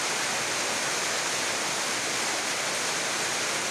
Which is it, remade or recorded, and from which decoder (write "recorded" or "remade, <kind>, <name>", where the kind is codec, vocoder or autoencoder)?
recorded